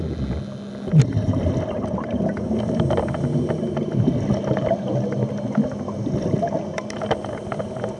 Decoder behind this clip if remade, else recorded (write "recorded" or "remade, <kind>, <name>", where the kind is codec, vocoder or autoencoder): recorded